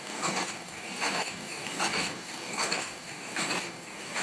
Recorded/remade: remade